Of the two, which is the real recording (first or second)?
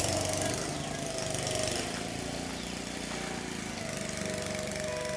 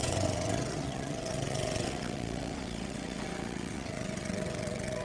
first